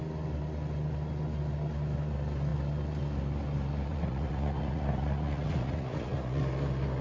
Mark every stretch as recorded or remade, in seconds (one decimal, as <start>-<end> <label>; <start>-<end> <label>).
0.0-3.9 recorded; 3.9-6.4 remade; 6.4-7.0 recorded